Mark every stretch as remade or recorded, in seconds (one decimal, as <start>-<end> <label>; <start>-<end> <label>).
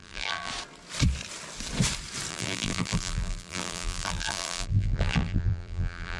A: 0.0-0.5 remade; 0.5-2.3 recorded; 2.3-6.2 remade